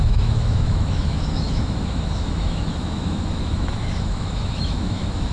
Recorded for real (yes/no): no